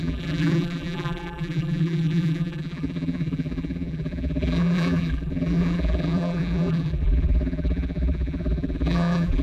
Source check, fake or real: fake